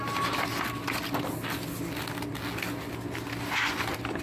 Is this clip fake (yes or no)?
no